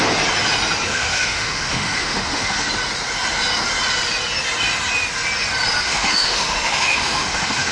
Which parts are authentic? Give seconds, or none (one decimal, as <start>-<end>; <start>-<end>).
0.0-0.9; 2.7-5.8